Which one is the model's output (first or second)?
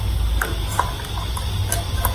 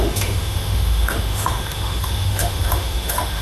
second